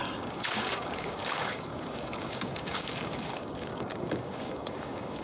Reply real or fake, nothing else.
fake